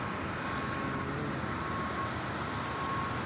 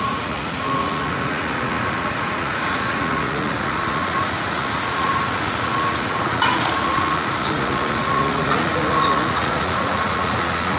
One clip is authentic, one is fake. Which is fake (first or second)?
second